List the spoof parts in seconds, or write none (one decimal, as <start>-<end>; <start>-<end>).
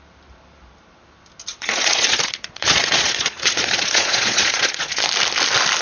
1.5-5.0